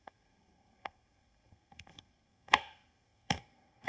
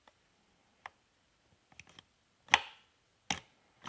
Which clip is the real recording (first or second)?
second